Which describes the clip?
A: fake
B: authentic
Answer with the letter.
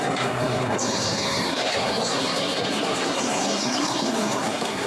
A